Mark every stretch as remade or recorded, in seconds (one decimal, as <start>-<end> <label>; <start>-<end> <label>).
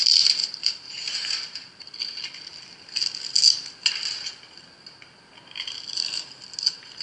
0.0-0.4 recorded; 0.4-2.4 remade; 2.4-7.0 recorded